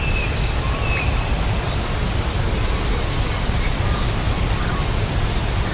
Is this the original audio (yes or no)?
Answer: yes